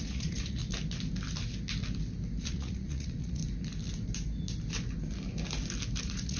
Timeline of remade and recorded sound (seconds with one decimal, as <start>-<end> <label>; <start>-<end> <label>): 0.0-0.6 remade; 0.6-2.4 recorded; 2.4-3.4 remade; 3.4-6.0 recorded; 6.0-6.4 remade

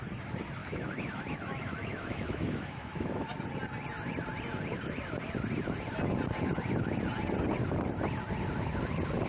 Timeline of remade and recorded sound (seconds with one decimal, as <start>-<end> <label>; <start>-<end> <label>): 0.0-0.6 recorded; 0.6-3.4 remade; 3.4-9.3 recorded

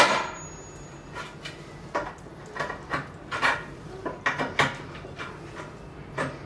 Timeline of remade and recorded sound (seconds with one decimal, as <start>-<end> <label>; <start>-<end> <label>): 0.0-3.4 recorded; 3.4-5.3 remade; 5.3-6.5 recorded

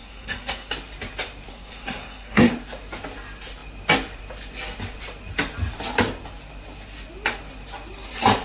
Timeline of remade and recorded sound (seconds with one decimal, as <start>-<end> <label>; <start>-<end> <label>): 0.0-0.7 remade; 0.7-1.5 recorded; 1.5-2.5 remade; 2.5-8.4 recorded

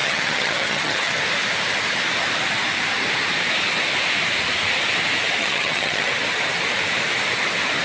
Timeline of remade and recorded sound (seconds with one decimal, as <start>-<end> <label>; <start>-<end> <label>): 0.0-1.2 remade; 1.2-5.4 recorded; 5.4-6.1 remade; 6.1-7.8 recorded

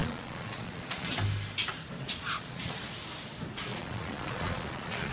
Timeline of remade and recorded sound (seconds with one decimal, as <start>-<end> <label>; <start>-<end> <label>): 0.0-1.1 remade; 1.1-2.0 recorded; 2.0-2.8 remade; 2.8-3.7 recorded; 3.7-5.1 remade

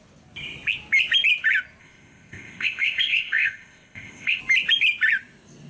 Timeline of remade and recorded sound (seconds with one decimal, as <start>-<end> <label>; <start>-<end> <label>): 0.0-1.8 recorded; 1.8-4.4 remade; 4.4-5.7 recorded

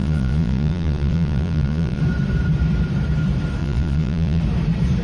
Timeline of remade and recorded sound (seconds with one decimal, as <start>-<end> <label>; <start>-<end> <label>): 0.0-2.0 remade; 2.0-3.6 recorded; 3.6-4.4 remade; 4.4-5.0 recorded